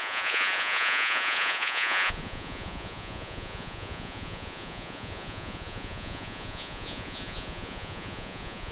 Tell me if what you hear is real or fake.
fake